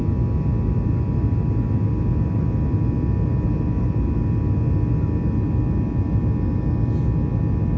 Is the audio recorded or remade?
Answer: recorded